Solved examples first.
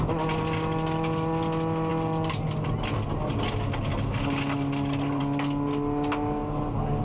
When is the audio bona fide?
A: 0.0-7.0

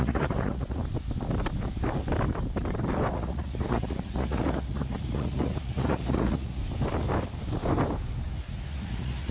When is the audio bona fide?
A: 0.8-3.1; 6.6-8.3

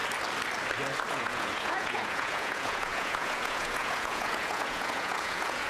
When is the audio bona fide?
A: 0.0-1.1

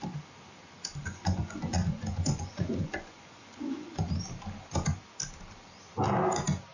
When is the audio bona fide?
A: 0.0-1.0; 4.1-6.7

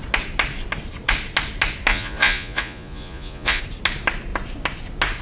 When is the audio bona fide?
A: 0.0-1.9; 3.6-5.2